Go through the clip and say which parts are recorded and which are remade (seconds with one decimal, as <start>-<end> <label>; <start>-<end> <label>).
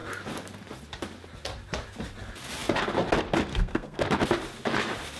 0.0-3.5 recorded; 3.5-4.0 remade; 4.0-5.2 recorded